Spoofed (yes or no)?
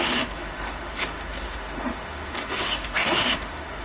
yes